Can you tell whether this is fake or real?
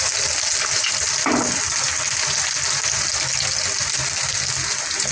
real